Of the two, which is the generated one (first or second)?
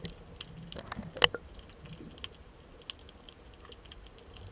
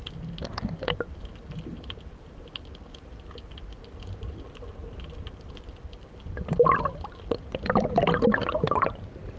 second